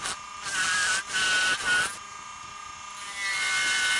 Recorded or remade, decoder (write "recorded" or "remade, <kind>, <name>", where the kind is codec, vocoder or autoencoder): recorded